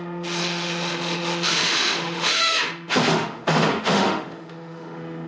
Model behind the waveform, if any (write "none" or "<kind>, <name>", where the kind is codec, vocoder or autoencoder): autoencoder, DAC-VAE